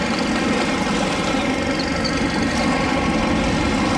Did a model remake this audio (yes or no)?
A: no